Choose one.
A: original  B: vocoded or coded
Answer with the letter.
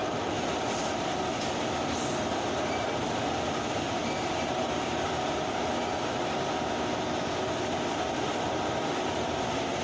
A